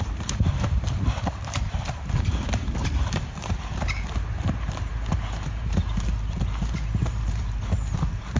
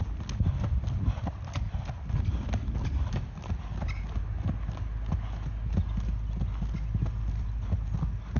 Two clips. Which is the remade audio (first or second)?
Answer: first